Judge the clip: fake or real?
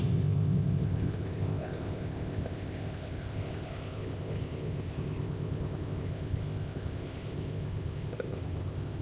fake